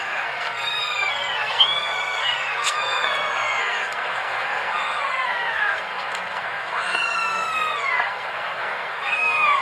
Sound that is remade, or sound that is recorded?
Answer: remade